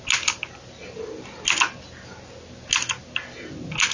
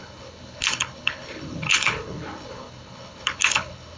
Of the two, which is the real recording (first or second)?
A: first